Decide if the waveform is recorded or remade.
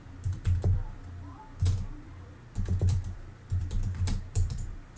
remade